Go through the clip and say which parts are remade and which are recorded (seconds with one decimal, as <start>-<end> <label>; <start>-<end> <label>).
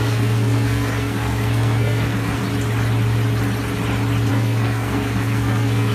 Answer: 0.0-2.4 remade; 2.4-4.3 recorded; 4.3-5.9 remade